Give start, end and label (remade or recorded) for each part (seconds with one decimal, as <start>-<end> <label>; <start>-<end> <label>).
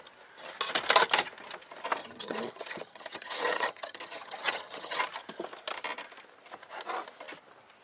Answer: 0.0-2.0 recorded; 2.0-5.0 remade; 5.0-7.8 recorded